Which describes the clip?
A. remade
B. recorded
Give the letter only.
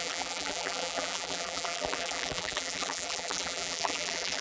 A